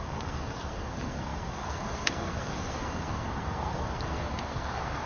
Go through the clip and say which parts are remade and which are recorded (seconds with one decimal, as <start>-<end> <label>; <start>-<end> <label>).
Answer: 0.0-5.1 remade